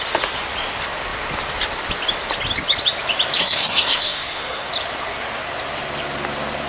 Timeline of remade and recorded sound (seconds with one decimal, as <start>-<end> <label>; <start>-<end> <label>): 0.0-3.4 recorded; 3.4-4.7 remade; 4.7-6.7 recorded